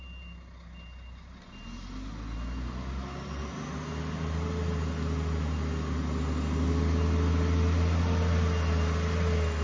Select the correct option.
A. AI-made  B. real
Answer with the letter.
B